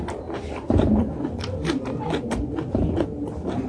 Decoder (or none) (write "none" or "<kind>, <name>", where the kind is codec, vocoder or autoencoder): none